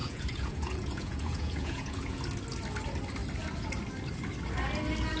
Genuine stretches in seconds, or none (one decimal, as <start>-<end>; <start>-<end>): 2.2-5.2